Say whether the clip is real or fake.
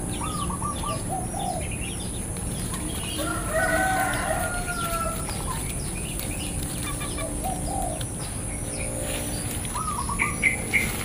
real